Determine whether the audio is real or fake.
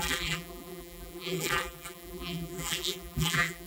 fake